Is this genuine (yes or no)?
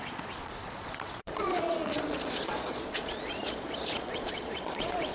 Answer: no